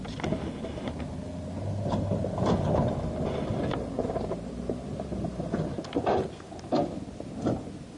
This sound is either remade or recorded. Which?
recorded